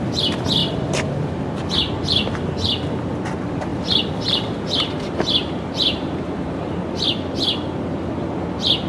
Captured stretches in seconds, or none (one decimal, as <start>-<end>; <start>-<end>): 0.0-0.6; 1.7-3.7; 6.7-8.9